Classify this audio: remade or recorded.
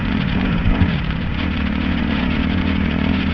remade